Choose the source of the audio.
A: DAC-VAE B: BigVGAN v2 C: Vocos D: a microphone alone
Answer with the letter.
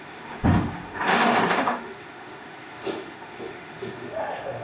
A